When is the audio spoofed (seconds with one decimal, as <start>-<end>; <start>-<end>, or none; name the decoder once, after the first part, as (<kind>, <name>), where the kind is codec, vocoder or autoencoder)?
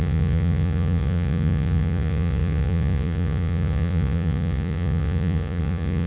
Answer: 0.0-6.1 (vocoder, Vocos)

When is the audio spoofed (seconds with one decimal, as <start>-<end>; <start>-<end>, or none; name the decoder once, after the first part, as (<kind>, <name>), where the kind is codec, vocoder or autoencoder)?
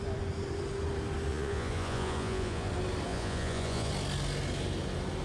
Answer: 1.3-2.7 (vocoder, Vocos); 3.1-3.9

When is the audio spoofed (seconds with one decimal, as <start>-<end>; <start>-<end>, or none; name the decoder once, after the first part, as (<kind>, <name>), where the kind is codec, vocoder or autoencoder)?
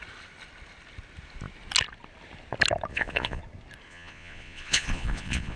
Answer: 2.9-3.4 (vocoder, Vocos); 3.9-5.6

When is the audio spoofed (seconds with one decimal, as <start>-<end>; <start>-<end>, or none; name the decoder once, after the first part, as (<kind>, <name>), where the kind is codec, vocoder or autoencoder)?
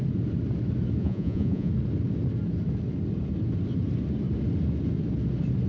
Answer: 1.0-1.7 (vocoder, Vocos)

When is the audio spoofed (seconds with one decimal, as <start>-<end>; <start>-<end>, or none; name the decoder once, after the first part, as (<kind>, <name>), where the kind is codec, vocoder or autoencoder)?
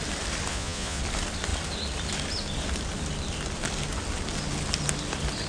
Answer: 0.5-1.0 (vocoder, Vocos)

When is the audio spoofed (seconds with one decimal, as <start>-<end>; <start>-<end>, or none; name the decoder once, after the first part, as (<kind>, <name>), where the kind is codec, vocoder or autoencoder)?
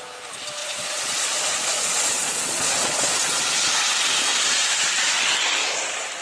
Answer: 0.6-3.7 (vocoder, Vocos); 4.3-5.4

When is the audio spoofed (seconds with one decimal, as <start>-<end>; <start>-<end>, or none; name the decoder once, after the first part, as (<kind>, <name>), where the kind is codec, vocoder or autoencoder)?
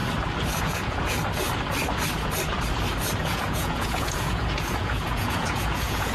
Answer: 0.6-1.2 (vocoder, Vocos); 3.2-6.1